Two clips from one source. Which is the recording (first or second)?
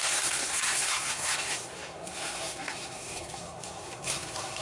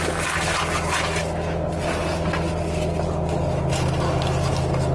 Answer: second